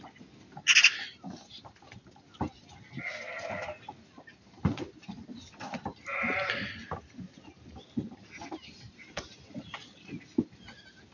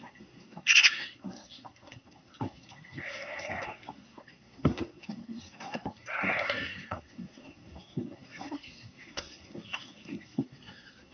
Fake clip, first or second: second